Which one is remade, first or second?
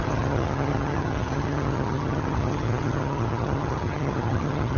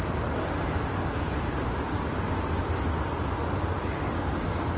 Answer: first